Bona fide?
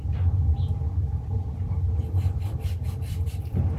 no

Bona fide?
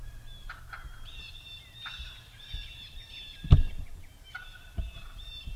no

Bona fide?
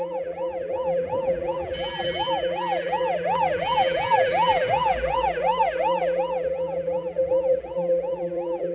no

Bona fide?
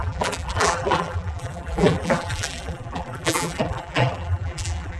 no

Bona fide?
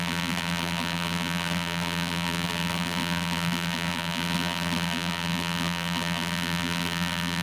no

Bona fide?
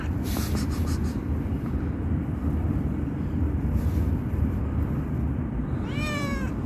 no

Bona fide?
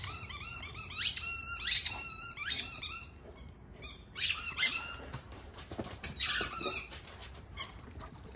no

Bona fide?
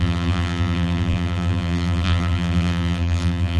no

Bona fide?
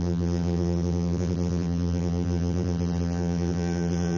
no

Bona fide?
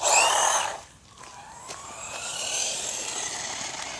no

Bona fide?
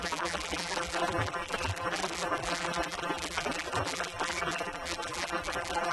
no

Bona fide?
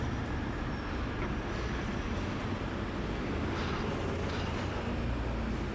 yes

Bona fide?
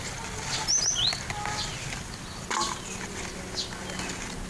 yes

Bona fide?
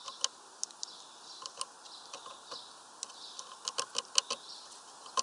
yes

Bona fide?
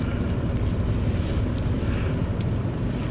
no